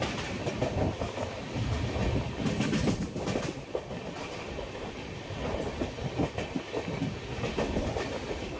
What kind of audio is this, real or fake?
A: real